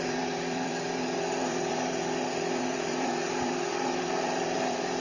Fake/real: fake